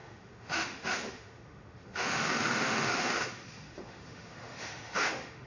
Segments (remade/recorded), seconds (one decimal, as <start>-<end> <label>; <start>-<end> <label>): 0.0-5.5 remade